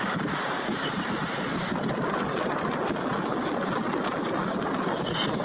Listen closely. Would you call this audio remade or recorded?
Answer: recorded